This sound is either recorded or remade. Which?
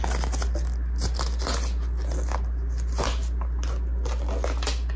recorded